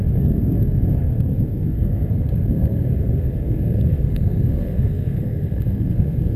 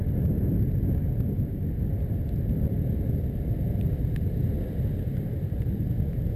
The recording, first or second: second